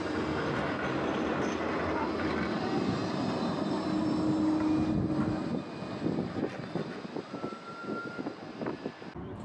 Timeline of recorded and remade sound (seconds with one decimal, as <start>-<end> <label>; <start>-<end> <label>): 0.0-9.4 recorded